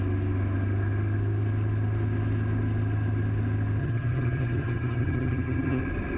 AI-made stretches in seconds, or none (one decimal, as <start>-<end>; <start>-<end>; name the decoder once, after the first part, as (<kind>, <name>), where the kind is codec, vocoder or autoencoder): 3.8-5.8 (vocoder, HiFi-GAN)